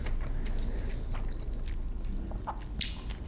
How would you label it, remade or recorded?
recorded